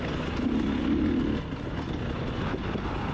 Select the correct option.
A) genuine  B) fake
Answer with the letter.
A